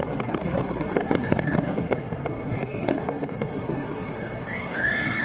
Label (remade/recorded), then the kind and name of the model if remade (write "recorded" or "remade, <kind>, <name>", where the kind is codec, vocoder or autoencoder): remade, codec, SNAC